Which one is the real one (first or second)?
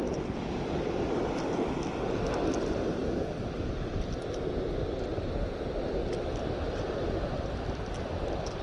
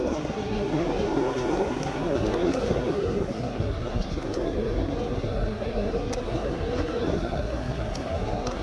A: first